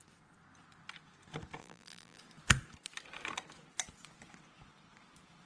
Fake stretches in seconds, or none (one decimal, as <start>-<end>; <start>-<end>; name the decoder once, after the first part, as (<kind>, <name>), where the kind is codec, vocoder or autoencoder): 1.6-2.2 (vocoder, BigVGAN v2)